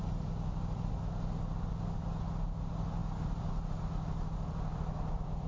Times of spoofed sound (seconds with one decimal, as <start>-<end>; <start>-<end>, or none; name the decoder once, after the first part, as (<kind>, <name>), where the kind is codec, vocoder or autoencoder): 0.0-0.9 (vocoder, BigVGAN v2)